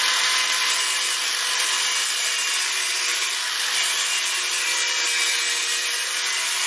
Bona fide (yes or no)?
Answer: yes